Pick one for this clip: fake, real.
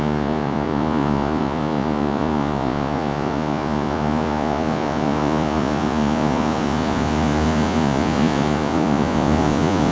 fake